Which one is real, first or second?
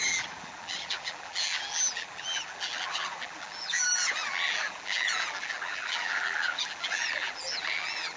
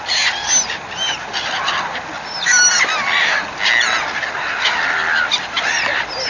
second